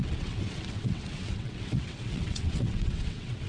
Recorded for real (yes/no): no